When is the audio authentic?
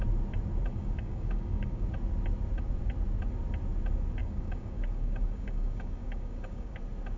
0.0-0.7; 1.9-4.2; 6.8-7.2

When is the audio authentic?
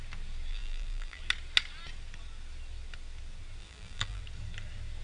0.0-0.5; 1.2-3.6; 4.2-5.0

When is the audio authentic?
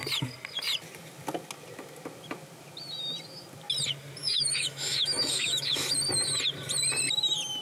0.0-4.2; 5.9-7.6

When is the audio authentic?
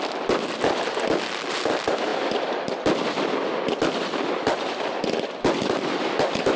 0.0-6.6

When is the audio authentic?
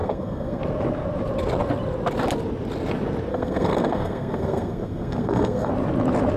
0.6-3.3; 5.7-6.4